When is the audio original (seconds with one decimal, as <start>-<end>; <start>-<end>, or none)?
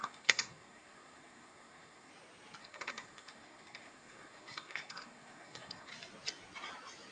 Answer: 2.1-2.6; 5.9-7.1